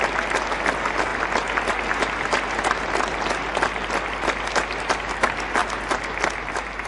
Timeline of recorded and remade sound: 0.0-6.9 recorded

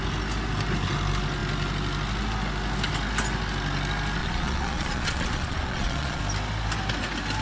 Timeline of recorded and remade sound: 0.0-4.2 recorded; 4.2-6.2 remade; 6.2-7.4 recorded

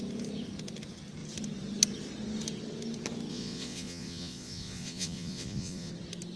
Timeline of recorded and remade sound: 0.0-3.3 recorded; 3.3-5.9 remade; 5.9-6.4 recorded

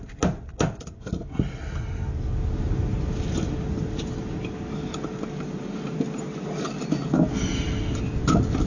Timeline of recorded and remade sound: 0.0-8.7 recorded

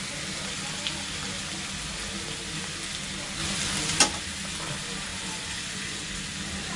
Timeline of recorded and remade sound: 0.0-5.1 recorded; 5.1-6.1 remade; 6.1-6.8 recorded

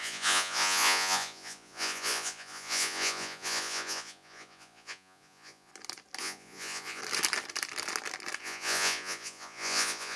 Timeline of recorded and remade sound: 0.0-5.7 remade; 5.7-6.2 recorded; 6.2-7.0 remade; 7.0-8.4 recorded; 8.4-10.2 remade

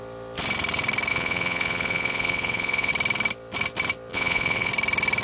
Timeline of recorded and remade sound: 0.0-1.1 recorded; 1.1-2.9 remade; 2.9-4.1 recorded; 4.1-4.7 remade; 4.7-5.2 recorded

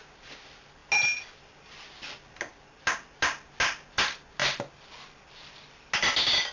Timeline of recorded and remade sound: 0.0-6.5 recorded